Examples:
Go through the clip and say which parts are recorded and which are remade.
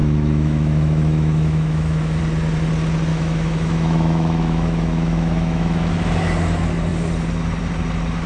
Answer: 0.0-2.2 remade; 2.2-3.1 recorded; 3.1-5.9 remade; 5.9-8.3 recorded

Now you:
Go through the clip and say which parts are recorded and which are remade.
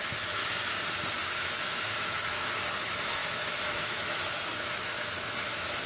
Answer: 0.0-0.4 remade; 0.4-1.3 recorded; 1.3-5.9 remade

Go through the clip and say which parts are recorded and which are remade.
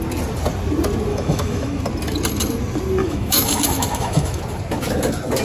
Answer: 0.0-1.1 recorded; 1.1-1.8 remade; 1.8-3.0 recorded; 3.0-4.4 remade; 4.4-5.4 recorded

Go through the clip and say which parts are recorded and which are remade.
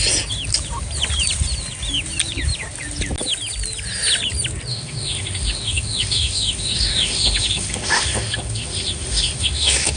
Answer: 0.0-4.7 recorded; 4.7-10.0 remade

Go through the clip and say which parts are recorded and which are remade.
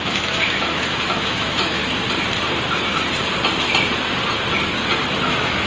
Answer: 0.0-1.8 remade; 1.8-5.2 recorded; 5.2-5.7 remade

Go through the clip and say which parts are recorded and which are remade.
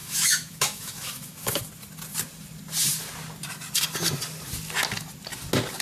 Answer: 0.0-1.6 remade; 1.6-5.8 recorded